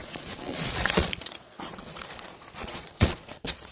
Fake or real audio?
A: fake